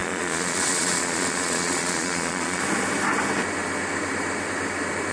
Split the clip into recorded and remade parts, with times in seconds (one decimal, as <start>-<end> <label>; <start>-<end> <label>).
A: 0.0-2.6 remade; 2.6-5.1 recorded